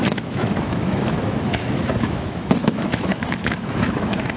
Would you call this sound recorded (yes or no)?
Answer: no